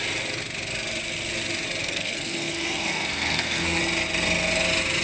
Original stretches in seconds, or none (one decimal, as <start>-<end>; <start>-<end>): 0.0-1.8; 3.8-5.0